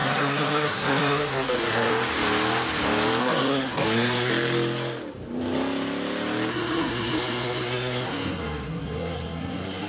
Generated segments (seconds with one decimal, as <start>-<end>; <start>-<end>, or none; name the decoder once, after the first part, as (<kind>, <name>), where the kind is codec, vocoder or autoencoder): 0.0-1.9 (codec, SNAC); 3.2-4.3; 6.5-9.9